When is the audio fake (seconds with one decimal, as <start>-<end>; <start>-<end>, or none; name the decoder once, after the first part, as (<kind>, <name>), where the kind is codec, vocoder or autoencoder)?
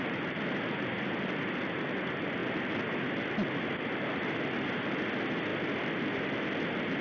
none